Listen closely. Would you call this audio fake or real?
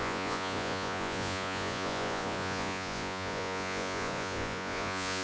fake